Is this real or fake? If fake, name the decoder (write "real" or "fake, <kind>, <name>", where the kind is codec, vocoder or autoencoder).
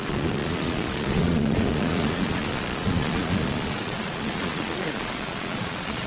fake, vocoder, Vocos